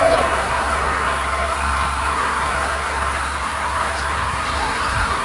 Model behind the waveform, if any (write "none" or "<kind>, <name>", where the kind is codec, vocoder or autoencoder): codec, SNAC